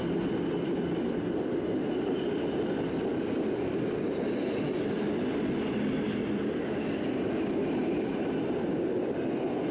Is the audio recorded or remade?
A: recorded